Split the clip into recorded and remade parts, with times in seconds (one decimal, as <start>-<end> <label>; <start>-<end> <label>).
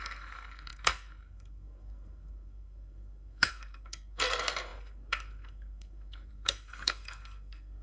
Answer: 0.0-7.8 remade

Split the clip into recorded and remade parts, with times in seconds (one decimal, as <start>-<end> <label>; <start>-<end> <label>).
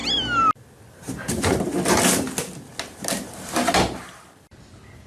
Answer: 0.0-5.1 recorded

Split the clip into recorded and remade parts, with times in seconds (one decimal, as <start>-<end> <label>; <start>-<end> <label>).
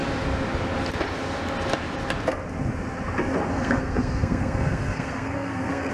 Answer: 0.0-3.5 recorded; 3.5-5.9 remade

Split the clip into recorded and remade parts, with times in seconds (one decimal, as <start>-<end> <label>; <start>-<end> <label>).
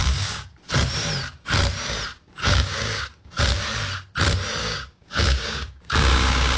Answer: 0.0-0.5 remade; 0.5-2.4 recorded; 2.4-3.4 remade; 3.4-4.6 recorded; 4.6-6.6 remade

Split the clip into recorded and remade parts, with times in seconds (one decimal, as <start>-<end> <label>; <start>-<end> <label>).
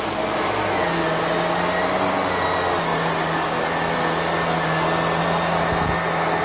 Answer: 0.0-6.4 recorded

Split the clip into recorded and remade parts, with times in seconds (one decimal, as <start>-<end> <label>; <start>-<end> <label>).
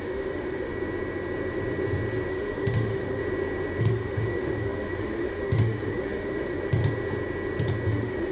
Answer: 0.0-0.7 remade; 0.7-2.3 recorded; 2.3-3.2 remade; 3.2-3.8 recorded; 3.8-6.8 remade; 6.8-7.9 recorded; 7.9-8.3 remade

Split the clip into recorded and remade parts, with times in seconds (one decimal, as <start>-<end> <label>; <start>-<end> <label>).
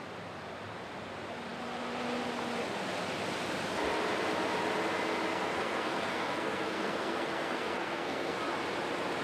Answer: 0.0-5.3 recorded; 5.3-8.4 remade; 8.4-9.2 recorded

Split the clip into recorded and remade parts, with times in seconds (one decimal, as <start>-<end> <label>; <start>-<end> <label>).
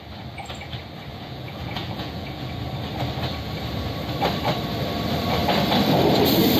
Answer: 0.0-1.1 recorded; 1.1-2.5 remade; 2.5-6.6 recorded